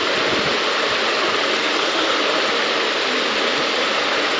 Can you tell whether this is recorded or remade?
recorded